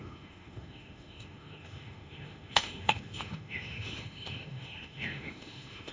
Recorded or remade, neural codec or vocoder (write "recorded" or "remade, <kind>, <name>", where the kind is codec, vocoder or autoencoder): remade, autoencoder, DAC-VAE